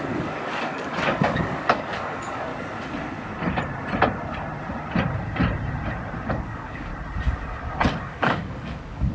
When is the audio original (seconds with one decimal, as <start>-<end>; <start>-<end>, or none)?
2.5-6.3; 6.9-8.0